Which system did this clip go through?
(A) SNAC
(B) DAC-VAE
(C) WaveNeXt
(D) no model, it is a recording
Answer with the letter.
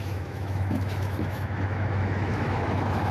B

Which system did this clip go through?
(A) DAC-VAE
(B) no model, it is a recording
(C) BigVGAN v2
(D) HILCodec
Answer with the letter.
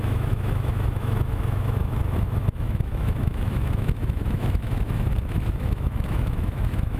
A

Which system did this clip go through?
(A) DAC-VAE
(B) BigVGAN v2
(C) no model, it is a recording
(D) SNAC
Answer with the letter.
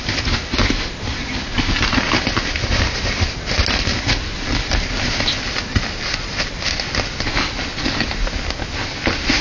C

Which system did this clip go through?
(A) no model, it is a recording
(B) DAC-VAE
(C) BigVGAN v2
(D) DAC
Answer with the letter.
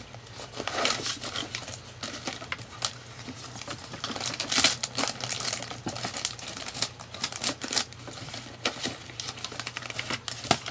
A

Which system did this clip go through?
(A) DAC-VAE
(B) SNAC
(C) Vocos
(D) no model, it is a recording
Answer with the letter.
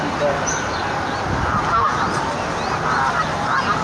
D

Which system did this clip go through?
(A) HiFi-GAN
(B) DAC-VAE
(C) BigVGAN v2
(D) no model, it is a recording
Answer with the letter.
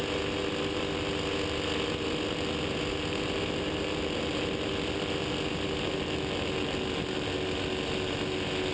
D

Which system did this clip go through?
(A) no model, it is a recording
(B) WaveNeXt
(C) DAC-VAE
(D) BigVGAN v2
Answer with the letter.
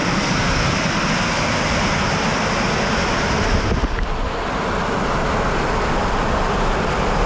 A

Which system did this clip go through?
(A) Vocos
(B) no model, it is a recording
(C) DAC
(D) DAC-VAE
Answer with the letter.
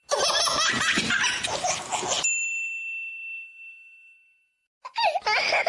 B